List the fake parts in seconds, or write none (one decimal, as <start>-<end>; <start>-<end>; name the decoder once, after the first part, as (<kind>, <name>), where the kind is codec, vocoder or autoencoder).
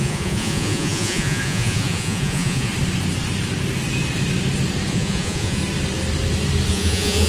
0.0-2.7 (vocoder, Vocos); 4.9-5.6; 6.7-7.3